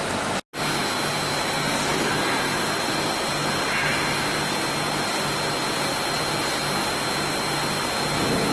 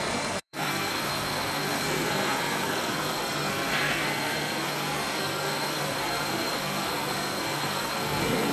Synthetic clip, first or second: second